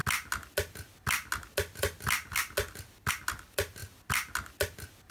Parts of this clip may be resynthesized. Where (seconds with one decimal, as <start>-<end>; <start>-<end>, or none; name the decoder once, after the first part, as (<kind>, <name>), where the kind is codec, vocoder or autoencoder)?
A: none